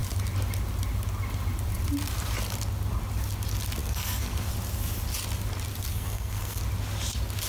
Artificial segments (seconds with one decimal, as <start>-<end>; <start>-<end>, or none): 3.8-4.5; 5.9-6.6